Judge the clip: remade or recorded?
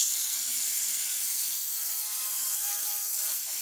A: remade